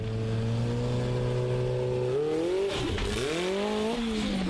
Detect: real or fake real